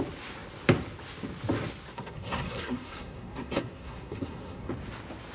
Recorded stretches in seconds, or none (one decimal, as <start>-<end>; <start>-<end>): 0.0-1.9; 4.7-5.3